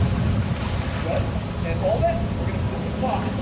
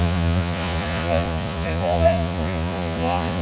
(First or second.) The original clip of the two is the first